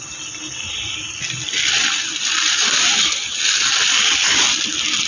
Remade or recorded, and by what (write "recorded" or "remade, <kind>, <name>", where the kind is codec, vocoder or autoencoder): recorded